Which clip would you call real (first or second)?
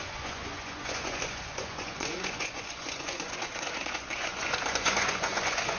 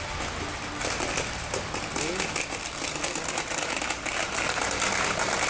second